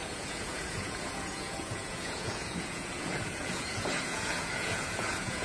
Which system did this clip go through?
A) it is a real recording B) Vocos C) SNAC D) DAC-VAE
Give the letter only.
B